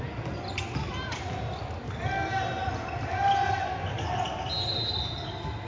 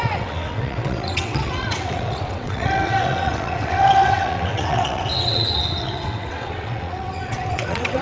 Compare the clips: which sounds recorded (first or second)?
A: first